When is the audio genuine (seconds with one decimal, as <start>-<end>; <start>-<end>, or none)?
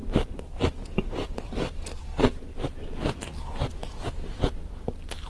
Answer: 0.0-5.3